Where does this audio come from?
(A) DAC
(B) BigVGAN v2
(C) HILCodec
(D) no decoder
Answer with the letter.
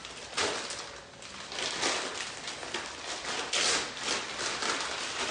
D